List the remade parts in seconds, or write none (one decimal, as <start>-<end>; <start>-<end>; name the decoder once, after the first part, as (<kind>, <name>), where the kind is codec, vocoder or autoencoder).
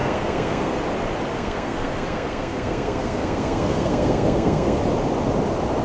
0.0-0.8 (codec, SNAC); 1.3-4.8